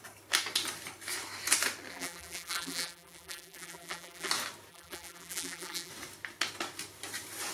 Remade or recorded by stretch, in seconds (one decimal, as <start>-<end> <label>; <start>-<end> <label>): 0.0-1.9 recorded; 1.9-4.3 remade; 4.3-4.7 recorded; 4.7-5.9 remade; 5.9-7.5 recorded